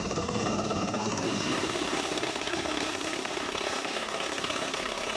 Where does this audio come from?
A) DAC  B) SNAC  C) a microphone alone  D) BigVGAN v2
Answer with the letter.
B